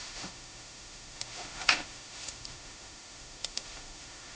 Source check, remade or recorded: remade